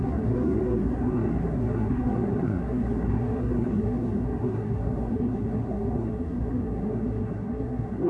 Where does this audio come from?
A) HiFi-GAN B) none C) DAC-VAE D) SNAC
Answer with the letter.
D